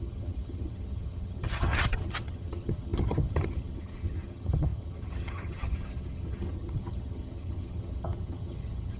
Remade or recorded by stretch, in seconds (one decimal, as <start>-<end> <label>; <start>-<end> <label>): 0.0-9.0 remade